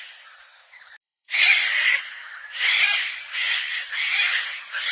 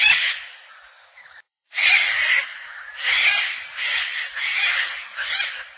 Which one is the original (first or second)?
second